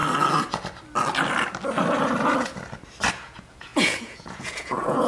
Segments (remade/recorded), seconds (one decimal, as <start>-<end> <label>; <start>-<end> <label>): 0.0-3.1 recorded; 3.1-5.1 remade